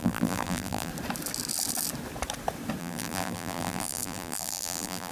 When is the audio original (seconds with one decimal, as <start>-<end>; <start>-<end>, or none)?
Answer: 0.9-2.8